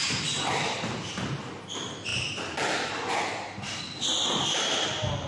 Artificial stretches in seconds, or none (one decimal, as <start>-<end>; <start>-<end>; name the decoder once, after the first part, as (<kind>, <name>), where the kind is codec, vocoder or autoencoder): none